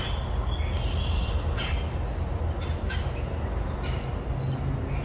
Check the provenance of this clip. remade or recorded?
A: recorded